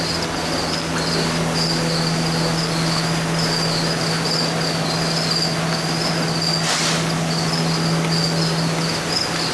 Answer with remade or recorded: recorded